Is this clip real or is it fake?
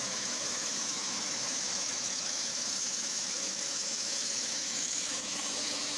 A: fake